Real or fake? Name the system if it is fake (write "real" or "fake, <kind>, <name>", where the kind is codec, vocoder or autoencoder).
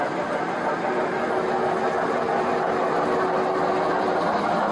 real